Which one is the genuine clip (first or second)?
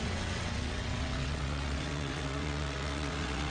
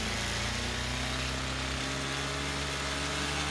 second